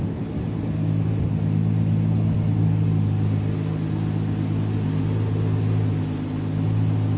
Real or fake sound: real